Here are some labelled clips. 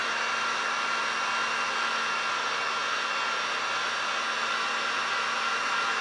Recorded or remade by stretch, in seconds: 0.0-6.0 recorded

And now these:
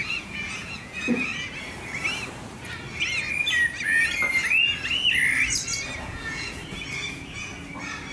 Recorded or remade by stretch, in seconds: 0.0-1.3 remade; 1.3-6.0 recorded; 6.0-6.6 remade; 6.6-7.1 recorded; 7.1-7.5 remade; 7.5-8.1 recorded